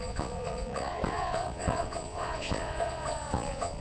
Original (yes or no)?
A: no